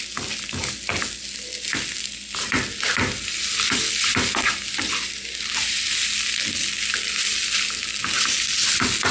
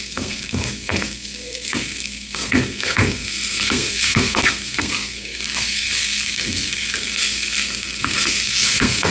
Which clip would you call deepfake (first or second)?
second